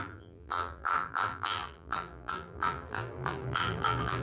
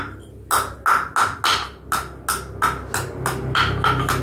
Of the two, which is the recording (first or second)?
second